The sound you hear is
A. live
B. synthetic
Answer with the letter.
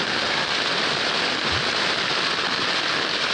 B